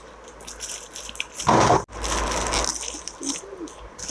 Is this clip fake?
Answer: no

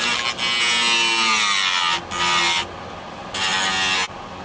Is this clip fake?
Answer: no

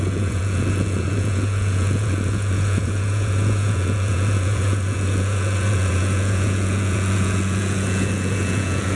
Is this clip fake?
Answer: yes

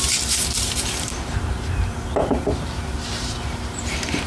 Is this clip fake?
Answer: yes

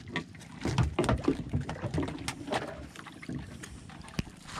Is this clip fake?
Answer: no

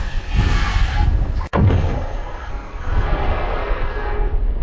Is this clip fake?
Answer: yes